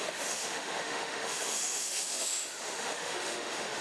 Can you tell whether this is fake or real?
fake